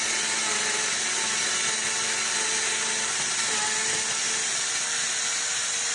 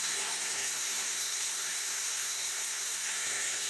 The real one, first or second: first